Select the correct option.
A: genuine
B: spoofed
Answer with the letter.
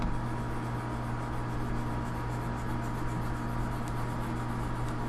A